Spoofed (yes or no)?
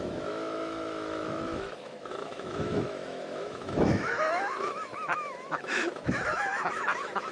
yes